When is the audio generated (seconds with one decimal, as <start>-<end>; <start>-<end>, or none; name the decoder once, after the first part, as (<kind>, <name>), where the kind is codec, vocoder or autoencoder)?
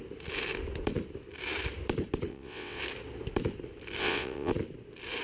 2.3-2.8 (vocoder, WaveNeXt); 4.0-4.5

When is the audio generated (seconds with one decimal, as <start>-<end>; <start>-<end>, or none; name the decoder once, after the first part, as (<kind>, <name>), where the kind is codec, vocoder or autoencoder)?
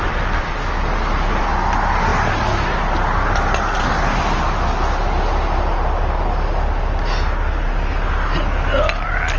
none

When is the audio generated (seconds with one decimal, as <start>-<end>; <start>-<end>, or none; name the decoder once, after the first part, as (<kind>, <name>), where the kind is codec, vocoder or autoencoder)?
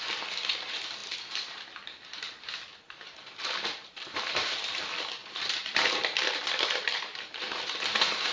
3.8-4.8 (vocoder, BigVGAN v2); 5.2-8.3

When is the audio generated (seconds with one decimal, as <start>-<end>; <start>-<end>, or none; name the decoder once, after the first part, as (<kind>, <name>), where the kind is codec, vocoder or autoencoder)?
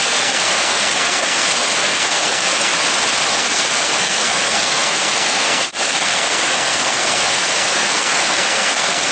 0.0-2.7 (codec, SNAC); 3.3-9.1